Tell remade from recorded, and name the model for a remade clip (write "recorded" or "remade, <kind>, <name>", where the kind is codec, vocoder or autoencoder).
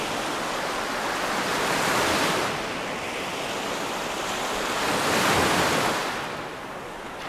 recorded